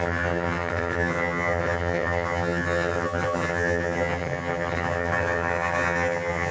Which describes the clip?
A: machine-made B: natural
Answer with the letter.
A